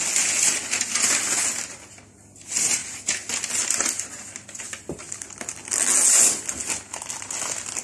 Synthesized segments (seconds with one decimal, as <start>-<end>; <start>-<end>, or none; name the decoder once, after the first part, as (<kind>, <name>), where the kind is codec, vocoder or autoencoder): none